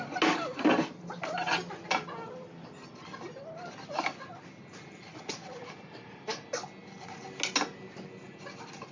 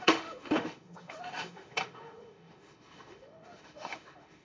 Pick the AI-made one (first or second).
second